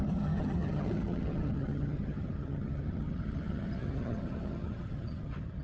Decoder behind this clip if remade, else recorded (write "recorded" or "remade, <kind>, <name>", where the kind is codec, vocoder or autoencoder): remade, vocoder, HiFi-GAN